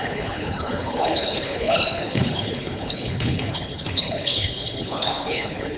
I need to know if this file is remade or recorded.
remade